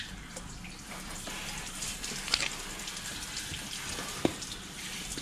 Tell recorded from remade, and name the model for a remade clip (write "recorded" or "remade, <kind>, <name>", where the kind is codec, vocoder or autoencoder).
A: recorded